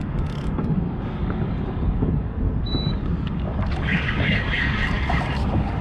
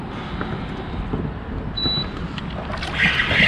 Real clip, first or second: second